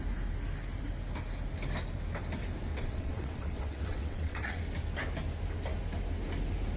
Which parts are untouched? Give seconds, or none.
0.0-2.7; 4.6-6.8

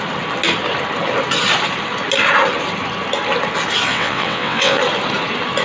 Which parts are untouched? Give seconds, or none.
0.0-3.9; 4.8-5.6

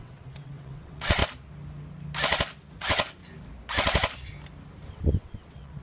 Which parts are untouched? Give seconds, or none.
1.2-2.8; 3.2-4.9

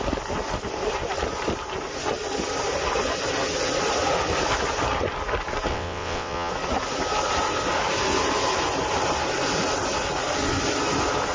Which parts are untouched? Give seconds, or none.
0.0-5.7; 6.5-11.3

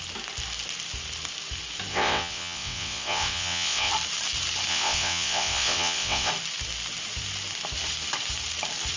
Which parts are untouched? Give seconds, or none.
0.0-1.9; 3.9-4.7; 6.3-9.0